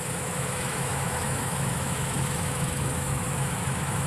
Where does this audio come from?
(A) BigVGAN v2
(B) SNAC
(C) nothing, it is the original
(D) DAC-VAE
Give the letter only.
D